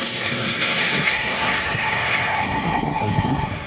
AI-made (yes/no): yes